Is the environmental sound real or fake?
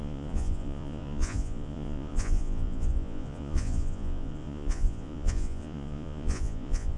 fake